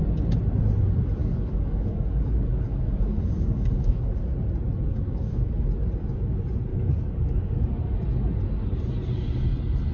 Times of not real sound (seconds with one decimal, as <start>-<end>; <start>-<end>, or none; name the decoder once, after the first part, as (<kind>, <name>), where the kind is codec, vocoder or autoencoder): 1.2-4.1 (codec, DAC); 4.9-5.5; 6.7-7.6